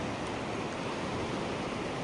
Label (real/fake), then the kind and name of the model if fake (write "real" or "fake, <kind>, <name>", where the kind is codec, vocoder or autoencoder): real